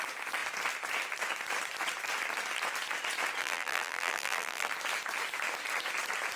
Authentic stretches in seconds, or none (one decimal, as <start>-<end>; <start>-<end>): 0.0-3.4; 4.7-6.4